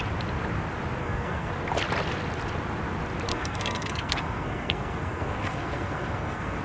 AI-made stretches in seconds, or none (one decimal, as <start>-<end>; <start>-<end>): 1.0-1.5; 3.3-6.6